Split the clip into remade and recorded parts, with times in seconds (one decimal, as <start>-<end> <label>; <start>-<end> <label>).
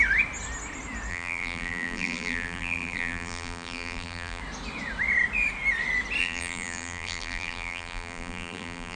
0.0-1.1 recorded; 1.1-4.4 remade; 4.4-6.2 recorded; 6.2-9.0 remade